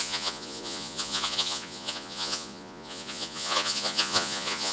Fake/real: fake